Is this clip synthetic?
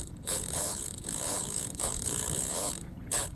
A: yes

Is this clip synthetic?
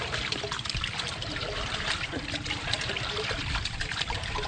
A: yes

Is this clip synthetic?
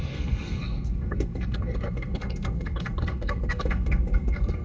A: yes